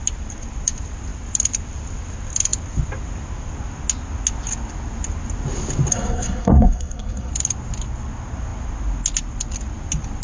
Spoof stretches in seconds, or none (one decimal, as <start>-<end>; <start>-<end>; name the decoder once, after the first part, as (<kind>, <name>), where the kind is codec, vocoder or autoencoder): 5.9-7.3 (codec, SNAC)